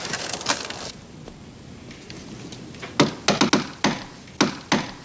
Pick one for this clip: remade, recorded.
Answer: recorded